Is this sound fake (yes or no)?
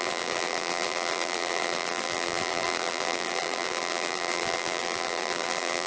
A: yes